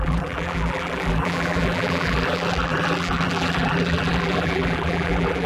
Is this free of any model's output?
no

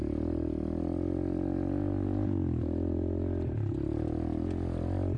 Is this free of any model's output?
yes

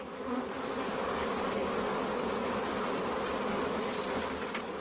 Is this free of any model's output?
yes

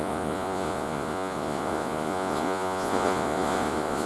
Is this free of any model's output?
no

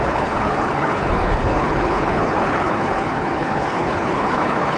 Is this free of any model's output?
no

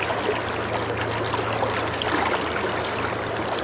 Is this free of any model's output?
yes